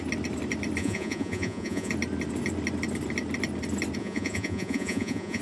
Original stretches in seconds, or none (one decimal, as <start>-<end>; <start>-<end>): 0.0-0.8; 1.9-4.0